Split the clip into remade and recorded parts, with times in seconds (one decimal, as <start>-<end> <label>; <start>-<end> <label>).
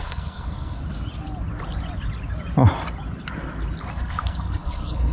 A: 0.0-0.8 remade; 0.8-3.9 recorded; 3.9-5.1 remade